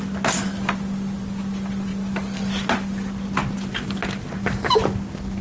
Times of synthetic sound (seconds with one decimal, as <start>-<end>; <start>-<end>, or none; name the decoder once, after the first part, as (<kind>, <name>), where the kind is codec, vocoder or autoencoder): none